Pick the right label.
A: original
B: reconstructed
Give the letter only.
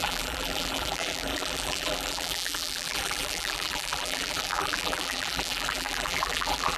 B